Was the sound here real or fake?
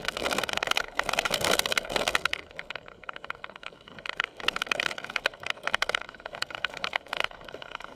fake